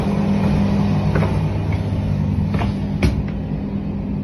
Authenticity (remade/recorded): recorded